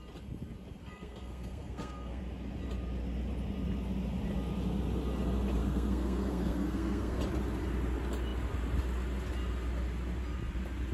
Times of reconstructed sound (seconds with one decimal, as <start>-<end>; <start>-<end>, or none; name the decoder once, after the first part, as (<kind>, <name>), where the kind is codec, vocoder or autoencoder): 0.8-2.2 (codec, SNAC); 5.6-7.2